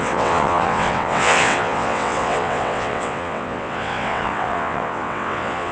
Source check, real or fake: fake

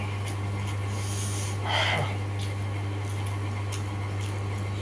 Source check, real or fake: real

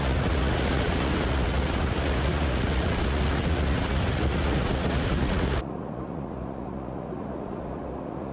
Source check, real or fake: fake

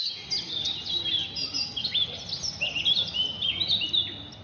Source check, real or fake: real